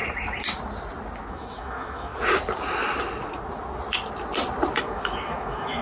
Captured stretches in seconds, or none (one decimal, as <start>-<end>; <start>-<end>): 0.0-1.3; 2.1-4.8